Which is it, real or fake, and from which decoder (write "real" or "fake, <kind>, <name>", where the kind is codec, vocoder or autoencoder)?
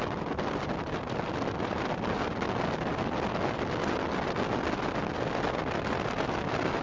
real